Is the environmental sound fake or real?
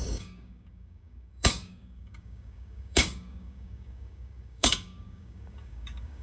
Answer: fake